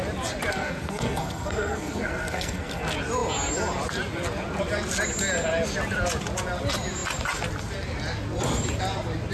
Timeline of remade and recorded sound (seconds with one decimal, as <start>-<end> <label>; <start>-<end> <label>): 0.0-0.5 recorded; 0.5-2.8 remade; 2.8-9.3 recorded